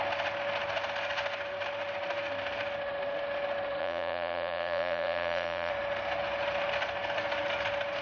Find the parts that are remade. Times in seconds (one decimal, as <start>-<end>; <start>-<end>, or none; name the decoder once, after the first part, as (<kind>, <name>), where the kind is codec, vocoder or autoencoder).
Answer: 3.8-5.7 (vocoder, Vocos)